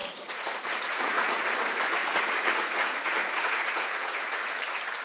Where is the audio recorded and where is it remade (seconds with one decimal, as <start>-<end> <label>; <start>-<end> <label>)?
0.0-1.4 remade; 1.4-2.0 recorded; 2.0-4.5 remade; 4.5-5.0 recorded